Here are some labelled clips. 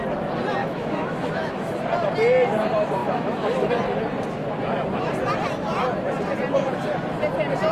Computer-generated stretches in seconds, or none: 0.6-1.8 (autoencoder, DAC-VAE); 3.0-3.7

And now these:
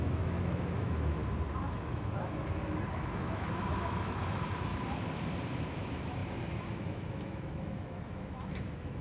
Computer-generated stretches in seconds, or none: 0.0-1.2 (autoencoder, DAC-VAE); 1.7-4.7; 5.7-9.0

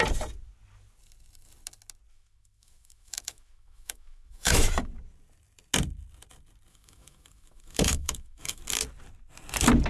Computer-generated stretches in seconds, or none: 2.1-4.7 (autoencoder, DAC-VAE); 6.7-8.6

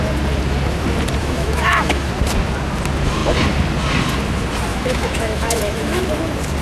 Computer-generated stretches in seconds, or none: 1.2-2.1 (autoencoder, DAC-VAE); 4.7-6.0

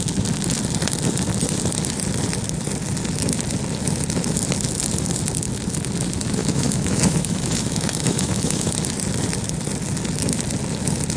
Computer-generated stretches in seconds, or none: 6.4-8.7 (autoencoder, DAC-VAE)

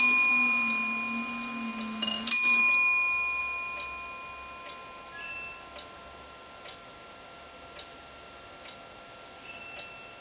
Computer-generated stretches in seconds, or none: none